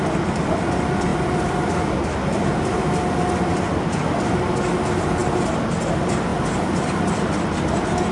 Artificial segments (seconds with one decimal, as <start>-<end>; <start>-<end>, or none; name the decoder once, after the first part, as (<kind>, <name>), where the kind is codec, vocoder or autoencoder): 6.3-7.1 (vocoder, BigVGAN v2)